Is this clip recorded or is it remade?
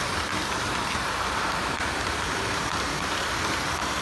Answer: remade